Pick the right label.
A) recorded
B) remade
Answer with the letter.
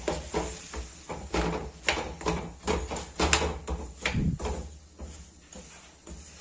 A